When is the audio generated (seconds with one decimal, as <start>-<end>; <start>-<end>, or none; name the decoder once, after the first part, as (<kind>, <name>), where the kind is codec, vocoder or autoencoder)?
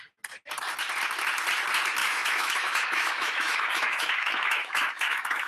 2.0-5.5 (autoencoder, DAC-VAE)